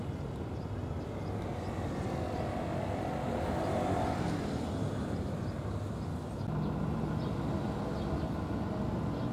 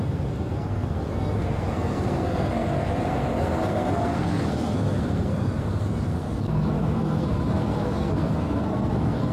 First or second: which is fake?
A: second